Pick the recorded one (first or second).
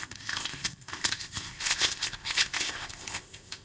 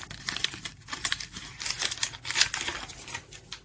second